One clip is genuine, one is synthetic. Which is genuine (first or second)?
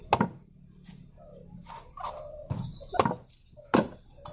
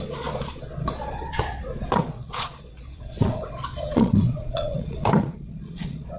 first